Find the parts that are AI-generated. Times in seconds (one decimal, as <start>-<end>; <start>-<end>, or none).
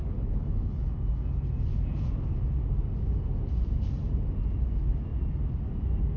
0.0-0.9